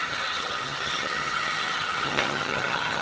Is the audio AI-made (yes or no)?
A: yes